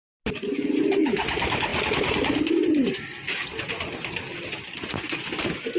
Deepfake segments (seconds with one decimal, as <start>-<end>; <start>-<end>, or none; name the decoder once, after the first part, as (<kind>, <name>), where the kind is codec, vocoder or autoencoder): none